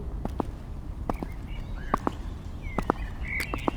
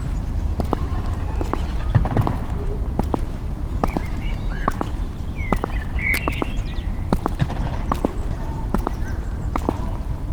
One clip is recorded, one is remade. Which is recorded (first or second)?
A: first